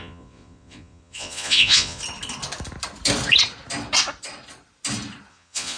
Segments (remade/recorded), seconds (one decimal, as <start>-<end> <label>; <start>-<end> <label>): 0.0-2.0 remade; 2.0-5.3 recorded; 5.3-5.8 remade